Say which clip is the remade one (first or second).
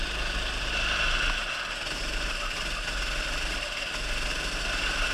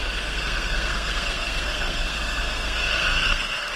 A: second